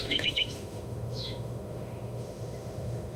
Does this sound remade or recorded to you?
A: remade